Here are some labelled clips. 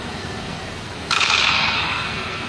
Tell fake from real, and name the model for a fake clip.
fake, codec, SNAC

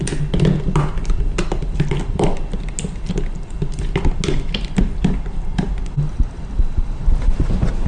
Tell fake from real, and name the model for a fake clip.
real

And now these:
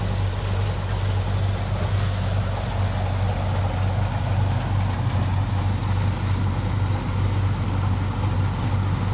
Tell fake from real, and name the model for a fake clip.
real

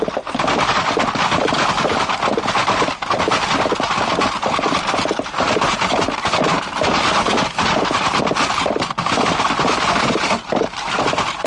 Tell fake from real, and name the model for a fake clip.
real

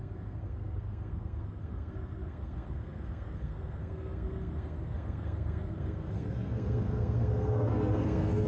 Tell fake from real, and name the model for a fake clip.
fake, codec, SNAC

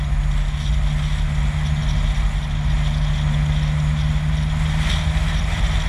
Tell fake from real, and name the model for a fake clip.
real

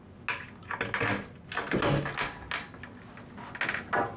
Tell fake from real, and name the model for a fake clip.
real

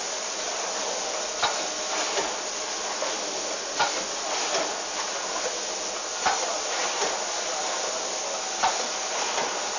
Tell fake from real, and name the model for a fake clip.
real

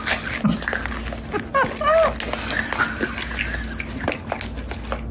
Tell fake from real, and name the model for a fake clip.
real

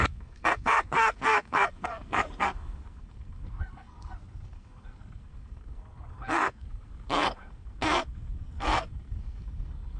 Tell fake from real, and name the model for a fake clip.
fake, codec, SNAC